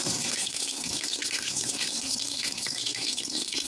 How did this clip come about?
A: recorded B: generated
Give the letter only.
B